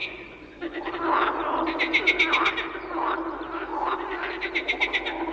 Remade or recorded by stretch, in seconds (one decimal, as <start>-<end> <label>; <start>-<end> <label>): 0.0-0.9 remade; 0.9-3.7 recorded; 3.7-4.3 remade; 4.3-5.3 recorded